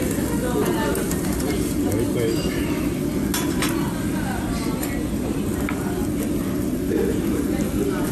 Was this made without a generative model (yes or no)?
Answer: yes